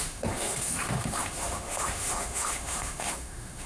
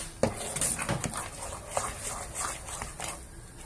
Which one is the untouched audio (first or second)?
second